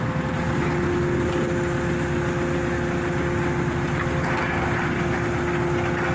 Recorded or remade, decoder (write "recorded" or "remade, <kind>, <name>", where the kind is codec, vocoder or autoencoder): recorded